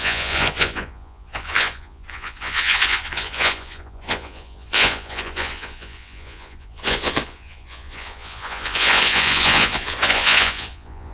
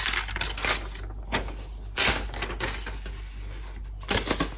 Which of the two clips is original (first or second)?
second